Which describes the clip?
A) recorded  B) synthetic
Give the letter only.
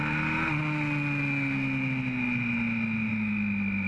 A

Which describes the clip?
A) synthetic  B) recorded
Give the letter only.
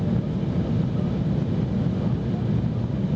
B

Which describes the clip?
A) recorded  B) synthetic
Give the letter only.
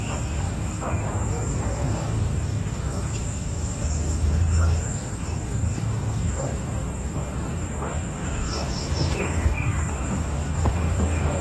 B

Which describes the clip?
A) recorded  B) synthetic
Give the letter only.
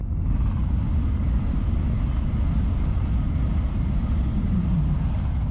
A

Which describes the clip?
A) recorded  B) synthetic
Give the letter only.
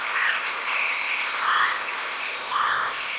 B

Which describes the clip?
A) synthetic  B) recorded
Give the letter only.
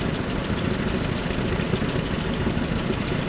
B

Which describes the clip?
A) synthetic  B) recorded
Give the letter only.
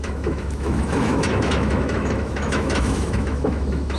A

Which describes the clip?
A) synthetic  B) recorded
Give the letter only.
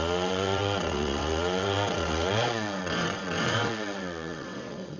A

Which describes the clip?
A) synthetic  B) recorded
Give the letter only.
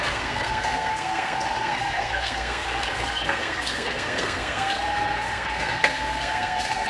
A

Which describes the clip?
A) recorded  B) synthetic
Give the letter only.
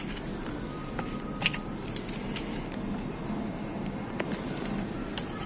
A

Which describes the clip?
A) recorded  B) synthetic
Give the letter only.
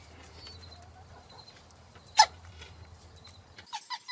B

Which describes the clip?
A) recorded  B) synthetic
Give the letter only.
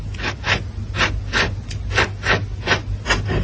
A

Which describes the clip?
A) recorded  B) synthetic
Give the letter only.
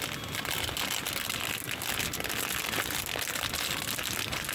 A